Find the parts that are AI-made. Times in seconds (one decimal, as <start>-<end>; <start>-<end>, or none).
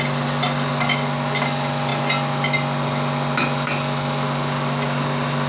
none